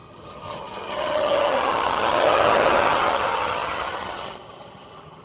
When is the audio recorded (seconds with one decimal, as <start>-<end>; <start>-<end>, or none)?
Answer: none